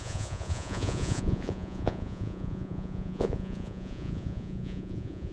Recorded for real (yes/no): no